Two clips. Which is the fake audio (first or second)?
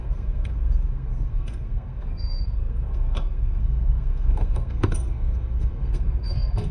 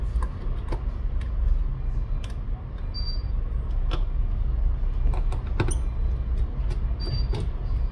first